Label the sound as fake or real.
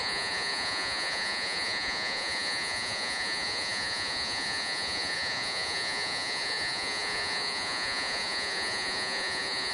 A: fake